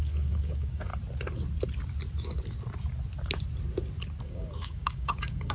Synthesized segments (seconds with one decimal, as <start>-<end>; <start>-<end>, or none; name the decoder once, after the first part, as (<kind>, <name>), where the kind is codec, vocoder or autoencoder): 0.0-0.9 (codec, DAC); 4.2-5.5